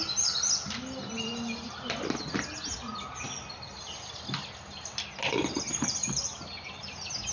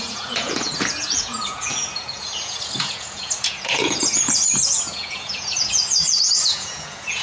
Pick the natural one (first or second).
first